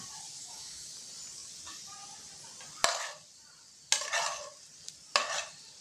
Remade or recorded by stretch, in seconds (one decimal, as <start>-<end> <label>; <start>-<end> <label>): 0.0-0.4 recorded; 0.4-0.9 remade; 0.9-5.8 recorded